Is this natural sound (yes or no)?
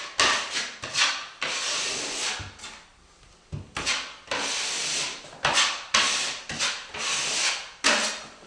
yes